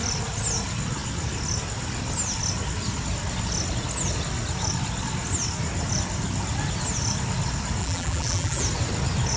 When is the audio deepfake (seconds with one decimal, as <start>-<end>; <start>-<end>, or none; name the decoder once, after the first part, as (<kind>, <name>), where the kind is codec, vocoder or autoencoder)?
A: 7.8-8.6 (vocoder, BigVGAN v2)